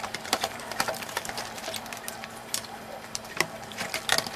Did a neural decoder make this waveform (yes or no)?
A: yes